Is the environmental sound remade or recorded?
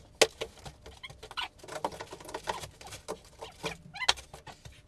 recorded